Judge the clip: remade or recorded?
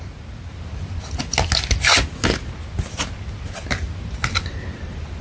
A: recorded